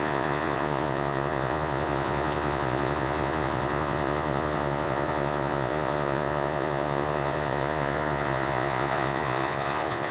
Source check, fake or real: fake